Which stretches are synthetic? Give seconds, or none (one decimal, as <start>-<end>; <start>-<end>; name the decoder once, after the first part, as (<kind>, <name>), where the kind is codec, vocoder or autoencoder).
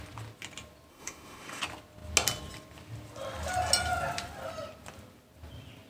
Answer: 0.9-1.6 (autoencoder, DAC-VAE)